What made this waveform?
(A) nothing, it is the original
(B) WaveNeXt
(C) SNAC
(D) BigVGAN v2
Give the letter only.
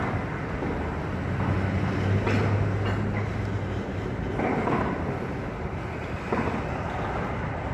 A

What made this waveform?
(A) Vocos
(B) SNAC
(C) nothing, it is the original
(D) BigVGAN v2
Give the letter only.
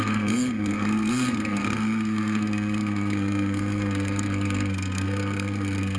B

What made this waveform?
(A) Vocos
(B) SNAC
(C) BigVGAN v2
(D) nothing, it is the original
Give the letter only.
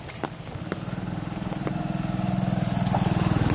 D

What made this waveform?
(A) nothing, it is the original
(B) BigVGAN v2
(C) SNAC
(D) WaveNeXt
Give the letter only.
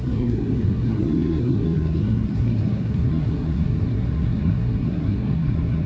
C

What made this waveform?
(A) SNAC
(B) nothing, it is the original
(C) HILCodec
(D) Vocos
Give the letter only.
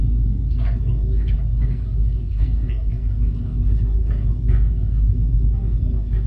A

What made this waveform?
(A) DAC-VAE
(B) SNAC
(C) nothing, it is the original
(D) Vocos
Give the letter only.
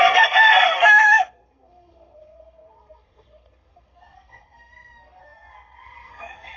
B